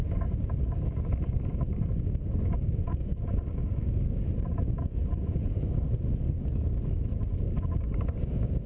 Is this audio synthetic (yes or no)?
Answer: yes